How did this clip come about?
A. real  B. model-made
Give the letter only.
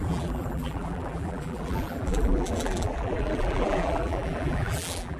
B